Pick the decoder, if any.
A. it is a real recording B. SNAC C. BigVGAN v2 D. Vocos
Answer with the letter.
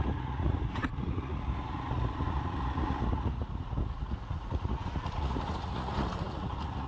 D